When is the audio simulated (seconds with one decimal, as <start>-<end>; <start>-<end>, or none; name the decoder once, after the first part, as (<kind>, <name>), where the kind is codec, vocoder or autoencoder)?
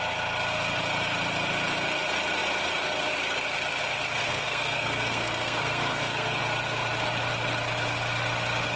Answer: 4.2-6.4 (codec, SNAC)